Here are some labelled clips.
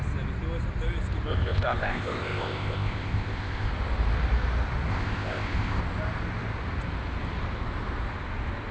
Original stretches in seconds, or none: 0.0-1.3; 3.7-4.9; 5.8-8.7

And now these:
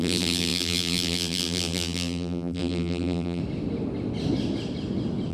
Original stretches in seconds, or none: 3.4-5.3